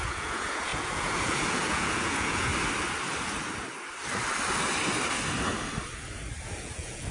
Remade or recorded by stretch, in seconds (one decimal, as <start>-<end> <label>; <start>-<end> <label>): 0.0-2.5 remade; 2.5-6.4 recorded; 6.4-7.1 remade